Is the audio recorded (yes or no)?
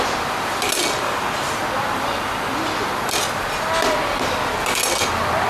yes